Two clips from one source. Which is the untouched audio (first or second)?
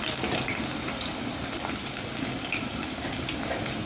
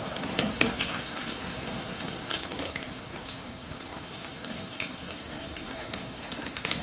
first